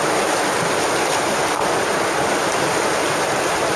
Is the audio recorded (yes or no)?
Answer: yes